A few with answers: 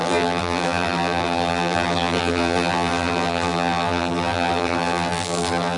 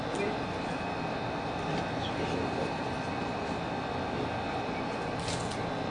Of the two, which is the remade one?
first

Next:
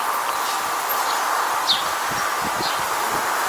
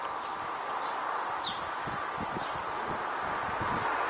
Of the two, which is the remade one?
second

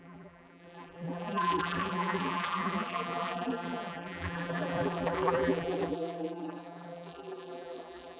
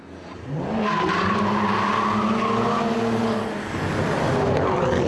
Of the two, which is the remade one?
first